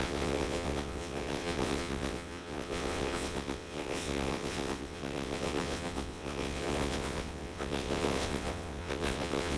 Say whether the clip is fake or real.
fake